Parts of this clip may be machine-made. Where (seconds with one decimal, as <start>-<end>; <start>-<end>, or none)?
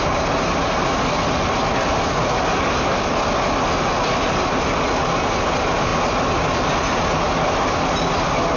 none